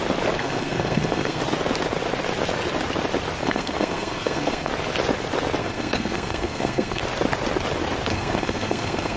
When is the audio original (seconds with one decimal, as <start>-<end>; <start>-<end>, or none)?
0.0-0.4; 1.4-3.4; 4.7-5.6; 7.0-8.1